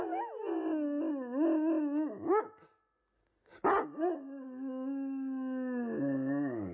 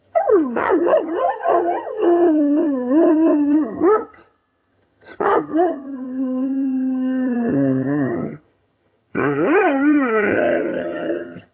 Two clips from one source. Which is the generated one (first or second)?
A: second